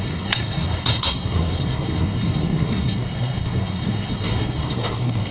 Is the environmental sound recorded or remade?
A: remade